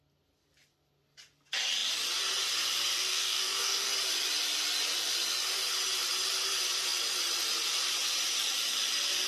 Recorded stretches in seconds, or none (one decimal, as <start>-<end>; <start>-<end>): 0.0-3.1; 3.9-9.3